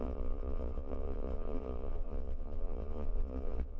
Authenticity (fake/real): fake